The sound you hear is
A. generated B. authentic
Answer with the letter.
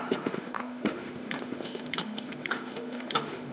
A